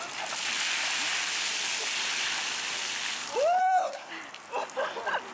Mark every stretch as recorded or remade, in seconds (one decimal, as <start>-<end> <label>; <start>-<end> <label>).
0.0-3.6 recorded; 3.6-4.1 remade; 4.1-5.3 recorded